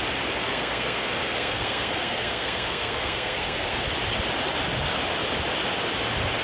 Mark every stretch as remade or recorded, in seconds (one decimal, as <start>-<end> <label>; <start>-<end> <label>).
0.0-0.4 recorded; 0.4-3.8 remade; 3.8-6.4 recorded